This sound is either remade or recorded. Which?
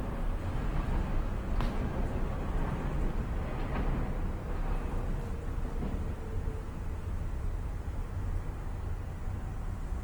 recorded